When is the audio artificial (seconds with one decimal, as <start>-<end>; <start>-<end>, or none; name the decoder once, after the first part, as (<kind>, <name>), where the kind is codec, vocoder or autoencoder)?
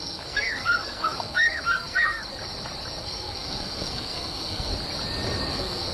0.0-2.3 (codec, SNAC); 3.0-4.7; 5.5-5.9